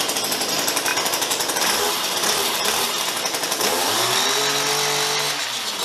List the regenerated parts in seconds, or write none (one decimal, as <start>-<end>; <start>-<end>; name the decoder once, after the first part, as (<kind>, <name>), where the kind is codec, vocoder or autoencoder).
0.9-4.4 (vocoder, BigVGAN v2)

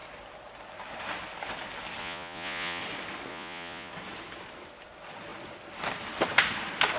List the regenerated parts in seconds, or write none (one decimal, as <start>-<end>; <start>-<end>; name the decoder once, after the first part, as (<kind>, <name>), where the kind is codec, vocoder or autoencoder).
2.0-2.8 (vocoder, Vocos); 3.3-3.9

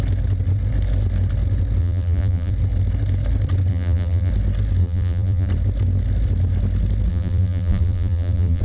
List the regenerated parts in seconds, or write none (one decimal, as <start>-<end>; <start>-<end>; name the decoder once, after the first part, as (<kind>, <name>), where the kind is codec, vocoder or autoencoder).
1.8-2.5 (vocoder, BigVGAN v2); 3.7-4.3; 4.8-5.5; 7.1-8.6

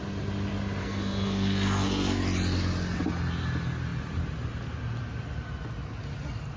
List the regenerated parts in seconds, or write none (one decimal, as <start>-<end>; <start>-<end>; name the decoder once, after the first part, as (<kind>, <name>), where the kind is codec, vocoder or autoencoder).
0.8-2.2 (codec, SNAC)

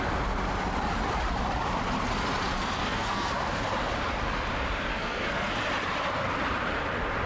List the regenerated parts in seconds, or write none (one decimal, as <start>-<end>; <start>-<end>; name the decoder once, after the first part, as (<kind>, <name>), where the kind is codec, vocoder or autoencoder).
2.8-3.3 (codec, SNAC); 4.9-5.5

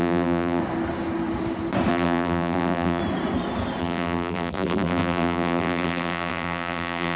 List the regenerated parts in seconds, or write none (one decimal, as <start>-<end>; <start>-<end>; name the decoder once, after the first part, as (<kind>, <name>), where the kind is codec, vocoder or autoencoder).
0.0-0.6 (vocoder, BigVGAN v2); 1.9-3.0; 3.8-7.2

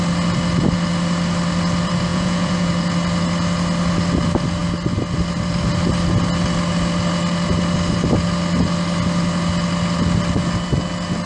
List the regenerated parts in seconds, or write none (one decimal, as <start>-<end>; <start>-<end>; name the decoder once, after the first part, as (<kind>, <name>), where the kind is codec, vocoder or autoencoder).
2.1-2.7 (vocoder, Vocos)

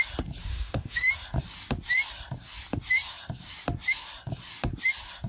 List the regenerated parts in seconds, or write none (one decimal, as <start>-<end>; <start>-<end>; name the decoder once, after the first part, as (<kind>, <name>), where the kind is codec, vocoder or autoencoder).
0.5-1.1 (autoencoder, DAC-VAE)